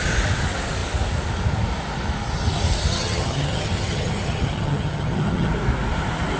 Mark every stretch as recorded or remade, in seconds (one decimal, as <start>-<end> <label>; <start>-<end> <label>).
0.0-2.9 recorded; 2.9-5.5 remade; 5.5-6.4 recorded